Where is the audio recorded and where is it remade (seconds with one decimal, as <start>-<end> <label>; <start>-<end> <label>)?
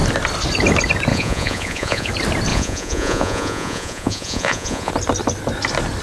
0.0-1.1 recorded; 1.1-2.1 remade; 2.1-2.5 recorded; 2.5-4.9 remade; 4.9-6.0 recorded